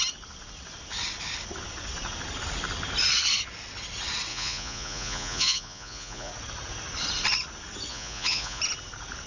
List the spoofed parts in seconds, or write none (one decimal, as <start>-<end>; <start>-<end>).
4.3-6.3; 7.9-8.6